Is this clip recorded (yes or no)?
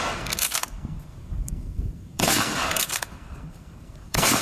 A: no